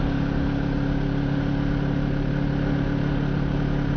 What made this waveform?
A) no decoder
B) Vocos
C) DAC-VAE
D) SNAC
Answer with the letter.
A